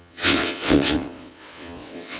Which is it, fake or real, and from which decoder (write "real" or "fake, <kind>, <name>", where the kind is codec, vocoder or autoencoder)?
fake, vocoder, WaveNeXt